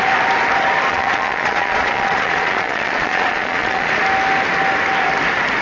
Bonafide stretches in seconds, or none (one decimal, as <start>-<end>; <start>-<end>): 0.0-0.9; 3.9-5.6